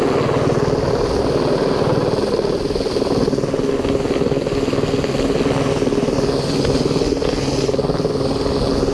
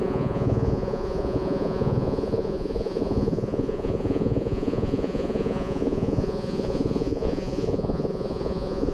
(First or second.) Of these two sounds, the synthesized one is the second